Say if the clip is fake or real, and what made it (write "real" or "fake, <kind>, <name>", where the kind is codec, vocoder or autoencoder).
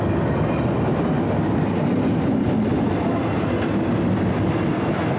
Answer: real